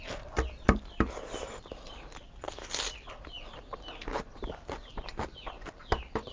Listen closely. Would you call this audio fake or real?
real